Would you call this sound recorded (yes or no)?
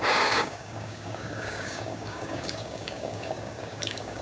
no